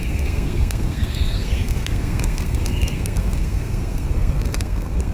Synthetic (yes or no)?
yes